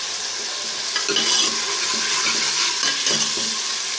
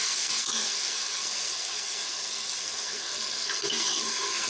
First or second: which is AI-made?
second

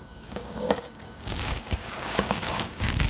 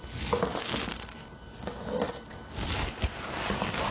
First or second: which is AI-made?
first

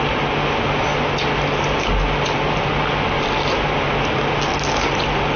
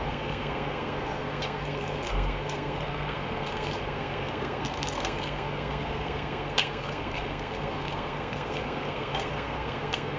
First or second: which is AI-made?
second